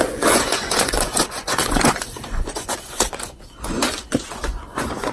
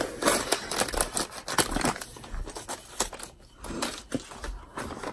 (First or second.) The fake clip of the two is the first